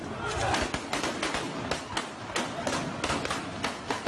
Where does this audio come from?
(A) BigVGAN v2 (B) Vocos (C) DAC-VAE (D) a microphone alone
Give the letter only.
D